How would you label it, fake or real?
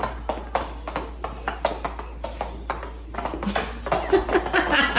real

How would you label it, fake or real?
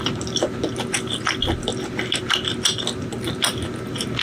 real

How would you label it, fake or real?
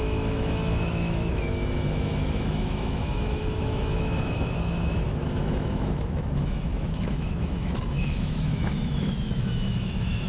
fake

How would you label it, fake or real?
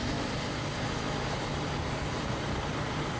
real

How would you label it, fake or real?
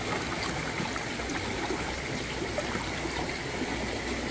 real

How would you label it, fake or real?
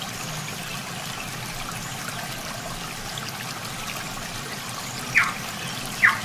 real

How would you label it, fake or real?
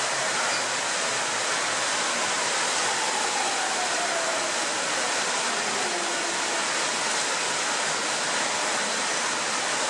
real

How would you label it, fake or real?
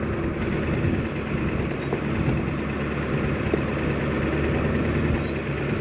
real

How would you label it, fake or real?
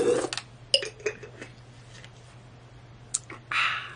real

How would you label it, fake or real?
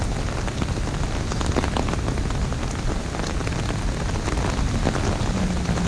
real